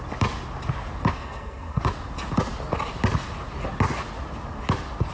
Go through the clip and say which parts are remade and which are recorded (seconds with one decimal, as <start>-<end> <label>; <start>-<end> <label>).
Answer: 0.0-1.1 recorded; 1.1-1.8 remade; 1.8-5.1 recorded